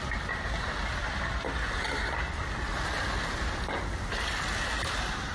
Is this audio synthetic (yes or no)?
no